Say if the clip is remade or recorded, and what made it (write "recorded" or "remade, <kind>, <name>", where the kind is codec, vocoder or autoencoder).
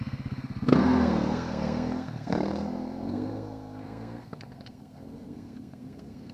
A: remade, codec, SNAC